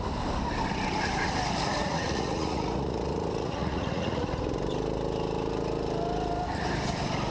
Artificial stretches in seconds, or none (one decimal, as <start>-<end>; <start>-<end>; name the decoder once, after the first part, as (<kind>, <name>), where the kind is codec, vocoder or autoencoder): 1.8-4.3 (vocoder, Vocos)

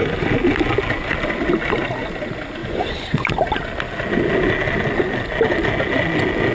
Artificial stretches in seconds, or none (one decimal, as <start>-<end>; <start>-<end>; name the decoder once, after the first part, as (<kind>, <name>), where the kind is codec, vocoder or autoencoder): 2.6-3.3 (vocoder, Vocos)

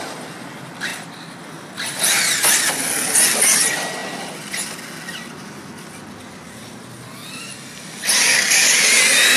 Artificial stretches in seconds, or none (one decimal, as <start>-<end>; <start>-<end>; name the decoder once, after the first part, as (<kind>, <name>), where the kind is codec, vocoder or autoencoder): none

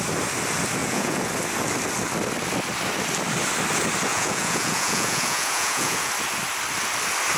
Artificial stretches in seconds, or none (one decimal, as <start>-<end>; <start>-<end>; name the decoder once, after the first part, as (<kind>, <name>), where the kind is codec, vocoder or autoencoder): 0.8-1.3 (vocoder, Vocos); 4.1-6.1

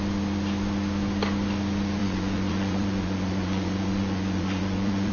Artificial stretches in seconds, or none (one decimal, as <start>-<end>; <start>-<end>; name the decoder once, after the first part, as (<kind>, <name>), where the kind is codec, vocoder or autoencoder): 2.0-5.1 (vocoder, Vocos)